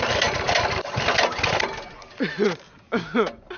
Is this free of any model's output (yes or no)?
yes